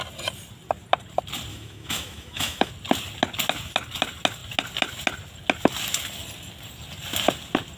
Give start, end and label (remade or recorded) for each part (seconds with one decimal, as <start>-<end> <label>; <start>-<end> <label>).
0.0-1.5 recorded; 1.5-2.7 remade; 2.7-7.8 recorded